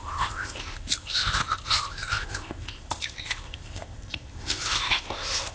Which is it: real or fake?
fake